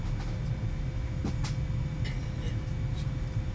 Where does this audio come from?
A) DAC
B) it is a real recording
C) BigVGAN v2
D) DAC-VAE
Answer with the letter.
B